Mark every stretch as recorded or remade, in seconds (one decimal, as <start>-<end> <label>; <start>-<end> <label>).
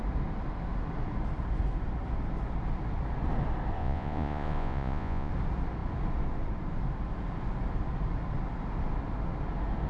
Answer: 0.0-3.8 recorded; 3.8-5.3 remade; 5.3-9.9 recorded